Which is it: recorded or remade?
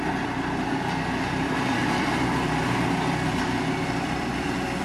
remade